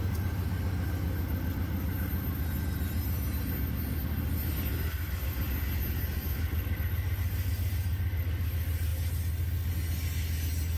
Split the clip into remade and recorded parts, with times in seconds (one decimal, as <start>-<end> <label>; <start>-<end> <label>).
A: 0.0-10.8 recorded